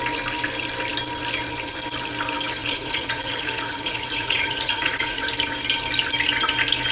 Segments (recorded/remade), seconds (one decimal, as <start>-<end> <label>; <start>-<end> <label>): 0.0-2.6 recorded; 2.6-5.2 remade; 5.2-6.9 recorded